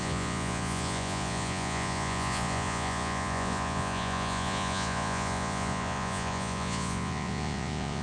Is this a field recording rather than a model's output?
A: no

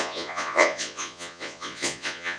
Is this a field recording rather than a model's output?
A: no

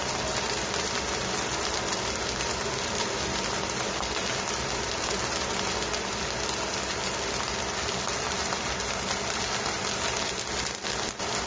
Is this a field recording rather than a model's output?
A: yes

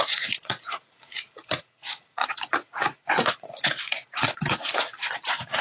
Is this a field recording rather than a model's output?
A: no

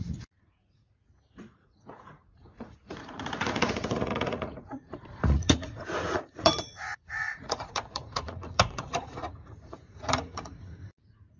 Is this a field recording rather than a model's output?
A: no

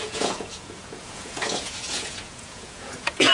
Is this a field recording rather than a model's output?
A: no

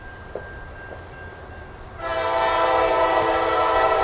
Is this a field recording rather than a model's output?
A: yes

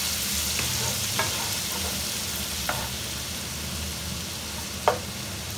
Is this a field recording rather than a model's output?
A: yes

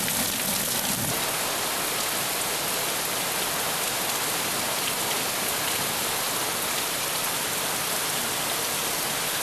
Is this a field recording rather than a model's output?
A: yes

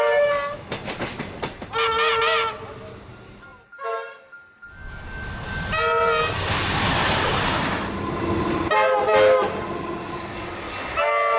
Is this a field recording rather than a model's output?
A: yes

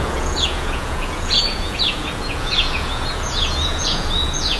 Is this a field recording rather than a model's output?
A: no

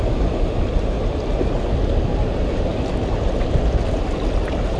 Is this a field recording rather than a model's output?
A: yes